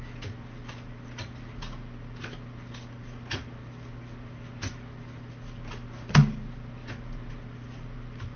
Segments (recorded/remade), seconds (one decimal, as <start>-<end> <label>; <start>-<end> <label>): 0.0-8.4 recorded